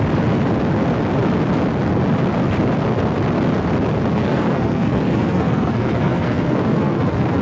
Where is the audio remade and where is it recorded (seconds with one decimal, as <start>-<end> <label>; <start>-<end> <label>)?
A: 0.0-4.1 recorded; 4.1-7.4 remade